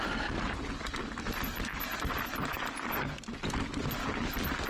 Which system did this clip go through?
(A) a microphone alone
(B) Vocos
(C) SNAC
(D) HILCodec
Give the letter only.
A